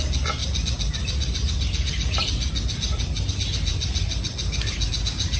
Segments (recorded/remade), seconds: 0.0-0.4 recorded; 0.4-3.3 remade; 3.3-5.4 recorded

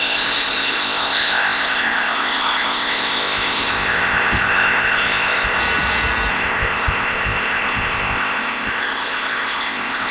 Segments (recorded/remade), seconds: 0.0-5.6 remade; 5.6-6.3 recorded; 6.3-10.1 remade